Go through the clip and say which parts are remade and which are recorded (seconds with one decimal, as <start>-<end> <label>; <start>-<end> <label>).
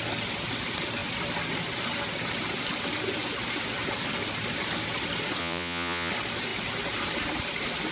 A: 0.0-5.4 recorded; 5.4-6.1 remade; 6.1-7.9 recorded